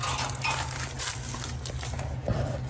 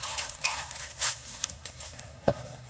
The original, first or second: first